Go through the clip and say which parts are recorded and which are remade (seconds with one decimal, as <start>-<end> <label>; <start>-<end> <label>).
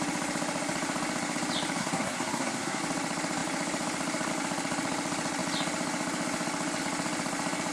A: 0.0-1.8 recorded; 1.8-2.8 remade; 2.8-7.7 recorded